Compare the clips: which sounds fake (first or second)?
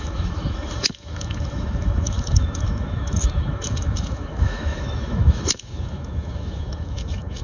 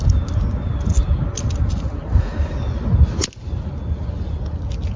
first